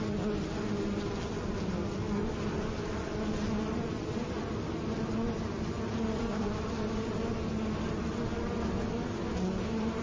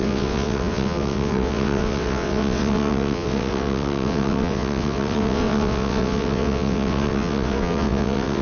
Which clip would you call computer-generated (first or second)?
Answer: second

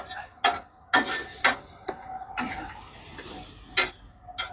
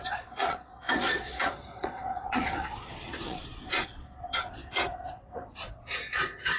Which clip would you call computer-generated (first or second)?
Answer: second